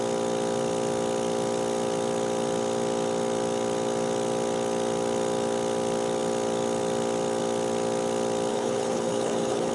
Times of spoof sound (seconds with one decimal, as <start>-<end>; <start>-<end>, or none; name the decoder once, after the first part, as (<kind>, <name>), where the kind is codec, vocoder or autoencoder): 8.5-9.7 (codec, HILCodec)